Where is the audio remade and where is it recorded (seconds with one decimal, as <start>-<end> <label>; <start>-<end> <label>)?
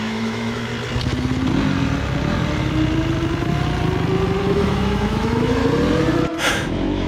0.0-0.7 remade; 0.7-4.4 recorded; 4.4-5.6 remade; 5.6-6.5 recorded; 6.5-7.1 remade